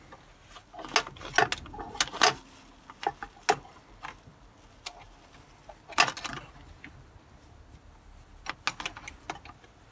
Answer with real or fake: real